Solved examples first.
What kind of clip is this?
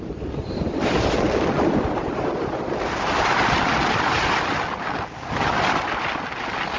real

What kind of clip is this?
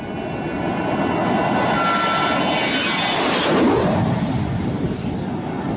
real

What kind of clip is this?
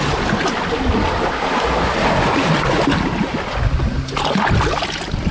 real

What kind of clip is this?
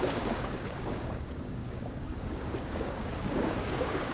fake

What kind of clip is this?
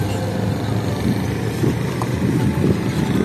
real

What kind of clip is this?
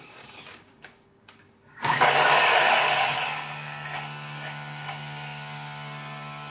fake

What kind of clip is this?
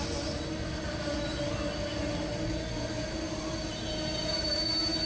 real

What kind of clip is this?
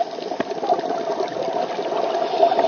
real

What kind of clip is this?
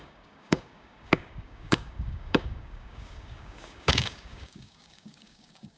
fake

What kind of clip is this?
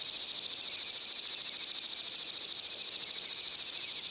real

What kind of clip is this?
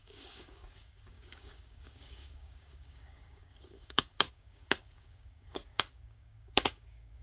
fake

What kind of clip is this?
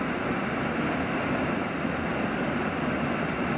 real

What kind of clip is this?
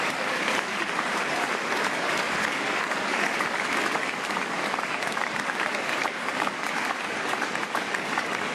fake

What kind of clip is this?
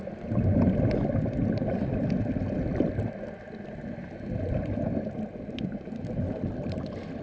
real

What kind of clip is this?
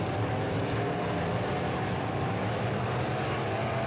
real